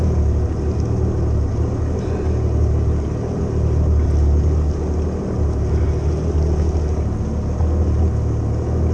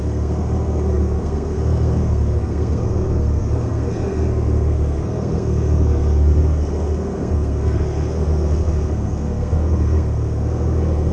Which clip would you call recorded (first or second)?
first